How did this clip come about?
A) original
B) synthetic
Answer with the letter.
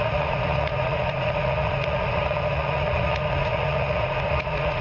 B